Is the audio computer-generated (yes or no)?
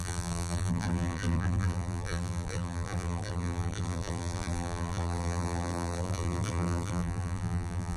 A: yes